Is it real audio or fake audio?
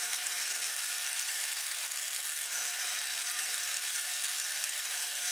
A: fake